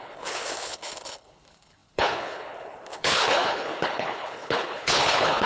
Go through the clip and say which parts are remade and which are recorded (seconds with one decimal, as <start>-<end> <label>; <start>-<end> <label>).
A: 0.0-5.5 remade